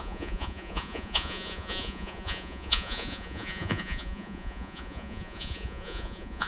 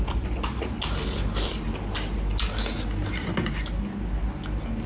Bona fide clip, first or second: second